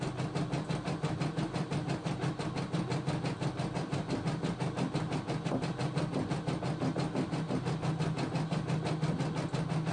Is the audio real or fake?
real